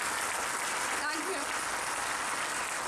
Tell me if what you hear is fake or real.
real